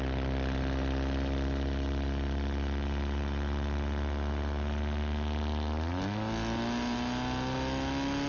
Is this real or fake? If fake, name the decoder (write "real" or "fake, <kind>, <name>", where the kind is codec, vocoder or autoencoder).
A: real